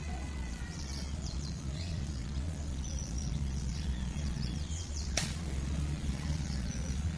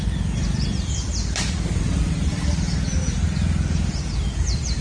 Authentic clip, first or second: second